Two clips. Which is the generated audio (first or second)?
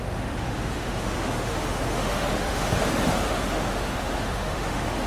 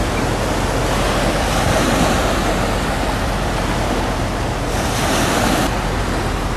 first